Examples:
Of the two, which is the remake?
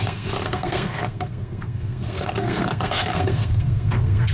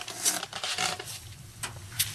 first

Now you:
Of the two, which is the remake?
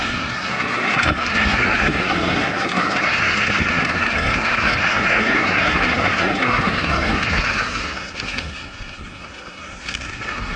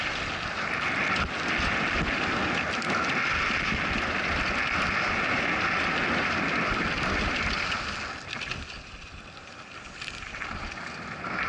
first